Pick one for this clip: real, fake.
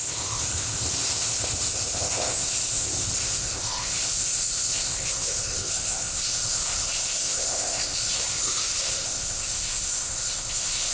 fake